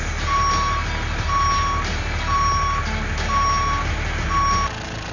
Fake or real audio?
real